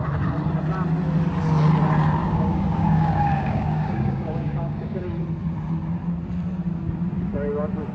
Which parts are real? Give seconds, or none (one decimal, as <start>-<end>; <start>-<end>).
0.0-2.2; 5.0-7.9